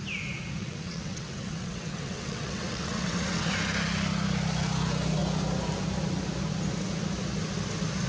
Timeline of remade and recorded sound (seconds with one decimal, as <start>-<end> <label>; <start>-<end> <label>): 0.0-0.6 recorded; 0.6-3.5 remade; 3.5-8.1 recorded